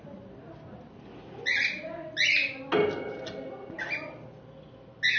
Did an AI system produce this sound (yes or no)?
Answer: no